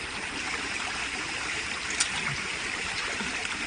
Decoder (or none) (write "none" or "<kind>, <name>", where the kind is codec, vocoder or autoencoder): none